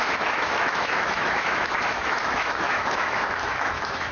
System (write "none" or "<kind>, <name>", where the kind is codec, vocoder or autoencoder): autoencoder, DAC-VAE